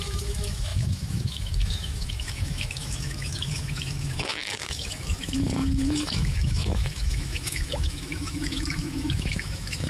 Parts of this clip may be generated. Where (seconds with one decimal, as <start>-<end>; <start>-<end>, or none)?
0.0-9.9